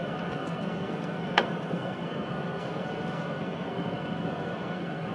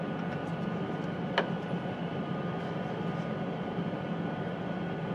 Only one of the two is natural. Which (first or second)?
second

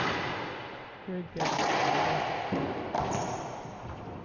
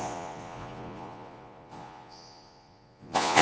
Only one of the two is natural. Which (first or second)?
first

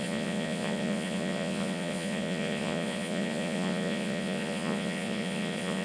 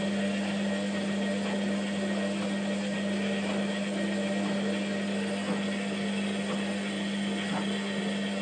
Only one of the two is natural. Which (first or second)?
second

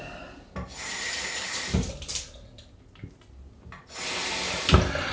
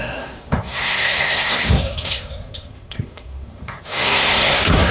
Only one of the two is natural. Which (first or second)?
first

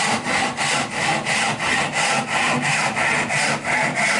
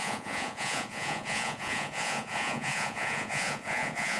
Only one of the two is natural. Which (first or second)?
first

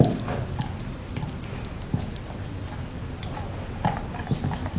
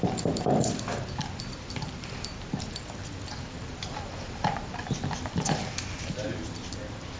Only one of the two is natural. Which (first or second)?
first